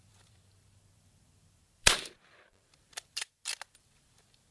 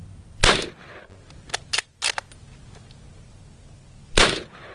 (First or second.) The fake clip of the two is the first